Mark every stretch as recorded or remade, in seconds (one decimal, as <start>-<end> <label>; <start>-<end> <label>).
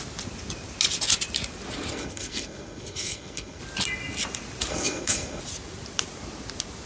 0.0-1.9 recorded; 1.9-3.6 remade; 3.6-4.7 recorded; 4.7-5.4 remade; 5.4-6.9 recorded